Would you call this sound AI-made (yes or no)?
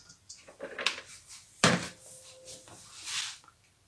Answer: yes